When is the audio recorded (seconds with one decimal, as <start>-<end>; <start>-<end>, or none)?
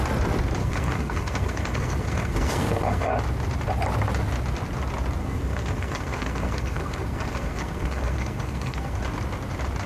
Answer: 0.0-0.6; 3.1-5.2; 9.0-9.9